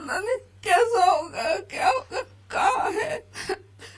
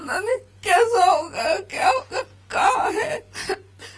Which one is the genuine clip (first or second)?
second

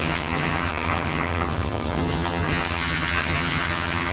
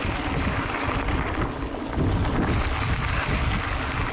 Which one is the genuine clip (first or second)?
second